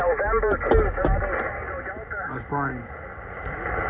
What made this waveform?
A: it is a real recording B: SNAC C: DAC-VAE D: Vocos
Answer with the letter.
A